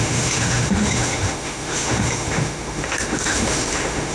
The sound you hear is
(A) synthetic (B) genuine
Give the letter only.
A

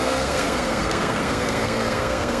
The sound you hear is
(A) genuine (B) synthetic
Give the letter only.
B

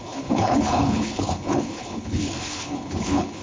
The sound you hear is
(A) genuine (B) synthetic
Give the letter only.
B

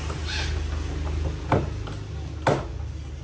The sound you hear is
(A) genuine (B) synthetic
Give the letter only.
A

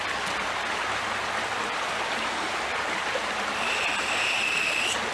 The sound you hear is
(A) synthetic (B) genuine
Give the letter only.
B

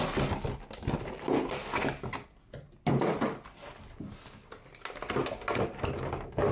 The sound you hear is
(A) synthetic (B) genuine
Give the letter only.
B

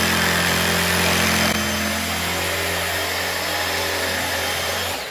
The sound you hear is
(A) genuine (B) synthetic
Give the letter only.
A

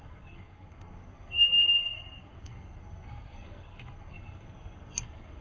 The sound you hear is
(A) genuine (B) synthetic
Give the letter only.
B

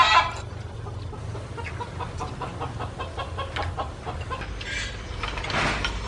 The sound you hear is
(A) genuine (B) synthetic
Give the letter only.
A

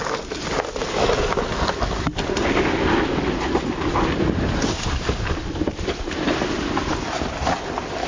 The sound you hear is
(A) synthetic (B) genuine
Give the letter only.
B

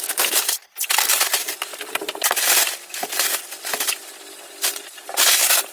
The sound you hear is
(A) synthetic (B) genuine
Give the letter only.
B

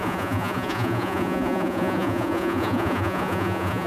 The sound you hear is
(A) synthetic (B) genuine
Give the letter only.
A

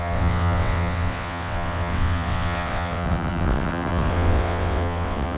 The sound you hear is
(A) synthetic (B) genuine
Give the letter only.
A